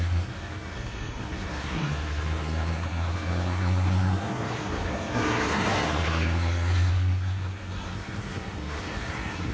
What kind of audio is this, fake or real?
fake